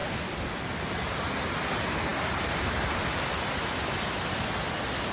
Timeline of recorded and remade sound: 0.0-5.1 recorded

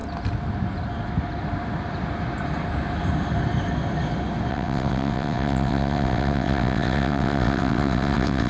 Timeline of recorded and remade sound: 0.0-4.5 recorded; 4.5-8.5 remade

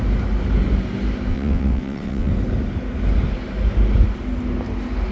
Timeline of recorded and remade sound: 0.0-1.3 recorded; 1.3-2.3 remade; 2.3-5.1 recorded

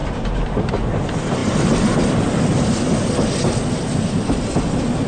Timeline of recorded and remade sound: 0.0-5.1 recorded

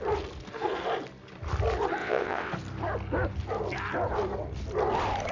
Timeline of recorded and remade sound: 0.0-2.0 recorded; 2.0-2.5 remade; 2.5-5.3 recorded

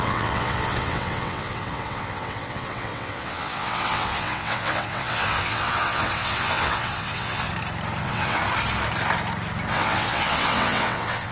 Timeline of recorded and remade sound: 0.0-7.5 remade; 7.5-8.0 recorded; 8.0-8.4 remade; 8.4-9.7 recorded; 9.7-11.3 remade

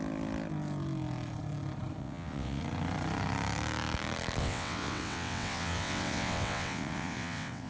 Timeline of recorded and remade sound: 0.0-2.0 recorded; 2.0-2.6 remade; 2.6-4.4 recorded; 4.4-7.7 remade